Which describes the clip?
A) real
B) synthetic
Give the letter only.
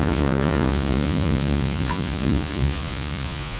B